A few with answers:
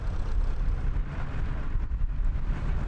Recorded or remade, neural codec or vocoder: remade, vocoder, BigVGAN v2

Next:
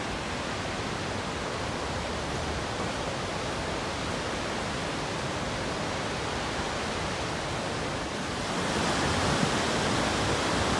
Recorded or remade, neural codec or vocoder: recorded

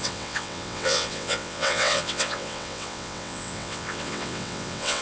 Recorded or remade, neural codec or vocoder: remade, vocoder, WaveNeXt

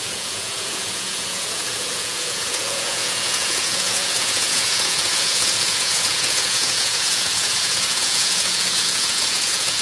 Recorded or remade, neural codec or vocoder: remade, vocoder, Vocos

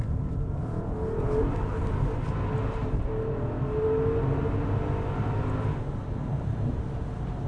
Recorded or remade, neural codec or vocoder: recorded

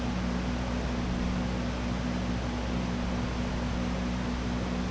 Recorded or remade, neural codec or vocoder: recorded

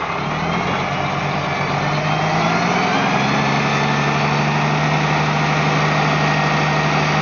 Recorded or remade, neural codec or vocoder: recorded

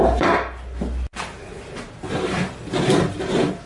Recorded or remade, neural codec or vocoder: recorded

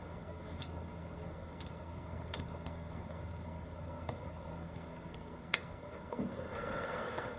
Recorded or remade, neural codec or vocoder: remade, codec, SNAC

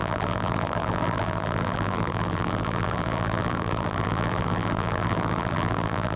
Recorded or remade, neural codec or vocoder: remade, vocoder, BigVGAN v2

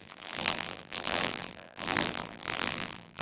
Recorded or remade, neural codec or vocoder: remade, vocoder, BigVGAN v2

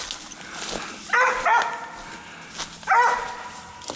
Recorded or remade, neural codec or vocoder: recorded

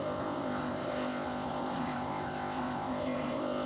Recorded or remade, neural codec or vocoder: remade, codec, ZipCodec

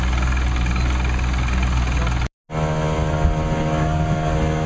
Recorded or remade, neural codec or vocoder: recorded